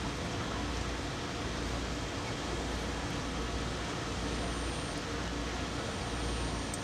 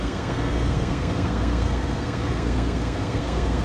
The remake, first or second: second